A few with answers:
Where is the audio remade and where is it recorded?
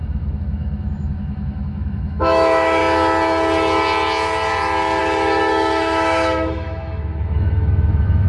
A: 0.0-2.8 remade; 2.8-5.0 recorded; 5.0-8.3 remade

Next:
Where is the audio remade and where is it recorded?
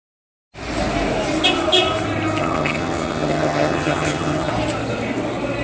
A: 0.0-2.4 recorded; 2.4-4.5 remade; 4.5-5.6 recorded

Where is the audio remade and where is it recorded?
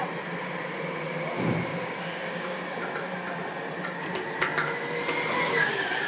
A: 0.0-1.7 recorded; 1.7-2.6 remade; 2.6-6.1 recorded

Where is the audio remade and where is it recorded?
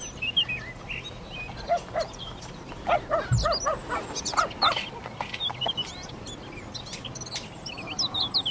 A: 0.0-8.5 recorded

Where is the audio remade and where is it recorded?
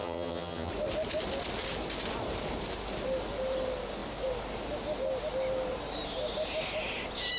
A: 0.0-0.7 remade; 0.7-7.4 recorded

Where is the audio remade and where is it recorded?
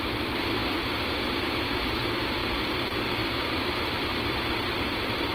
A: 0.0-2.4 recorded; 2.4-5.3 remade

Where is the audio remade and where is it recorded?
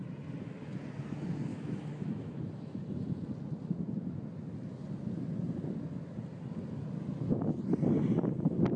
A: 0.0-1.5 recorded; 1.5-2.8 remade; 2.8-8.8 recorded